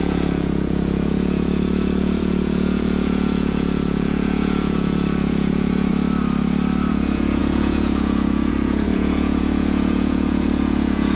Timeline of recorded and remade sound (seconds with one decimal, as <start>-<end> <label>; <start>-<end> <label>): 0.0-5.9 remade; 5.9-6.9 recorded; 6.9-11.2 remade